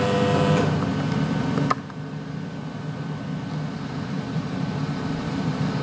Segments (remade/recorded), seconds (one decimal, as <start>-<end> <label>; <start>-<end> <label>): 0.0-0.9 remade; 0.9-4.4 recorded; 4.4-5.8 remade

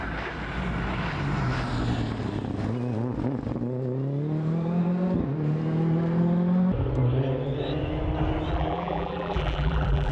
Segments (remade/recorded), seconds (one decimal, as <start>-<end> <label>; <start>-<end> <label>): 0.0-8.5 recorded; 8.5-10.1 remade

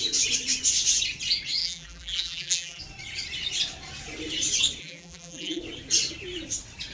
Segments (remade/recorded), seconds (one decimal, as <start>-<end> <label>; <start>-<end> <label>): 0.0-1.6 recorded; 1.6-2.8 remade; 2.8-4.8 recorded; 4.8-5.6 remade; 5.6-6.9 recorded

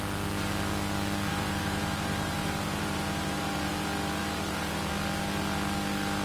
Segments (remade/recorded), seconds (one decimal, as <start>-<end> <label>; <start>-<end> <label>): 0.0-1.3 recorded; 1.3-3.7 remade; 3.7-4.2 recorded; 4.2-4.9 remade; 4.9-6.2 recorded

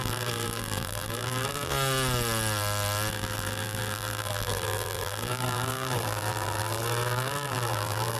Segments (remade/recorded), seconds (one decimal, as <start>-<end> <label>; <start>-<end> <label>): 0.0-1.7 remade; 1.7-3.1 recorded; 3.1-8.2 remade